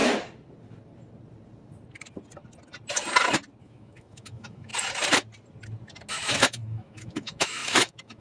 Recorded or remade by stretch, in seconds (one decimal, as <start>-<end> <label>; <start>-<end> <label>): 0.0-3.6 recorded; 3.6-4.7 remade; 4.7-6.1 recorded; 6.1-8.2 remade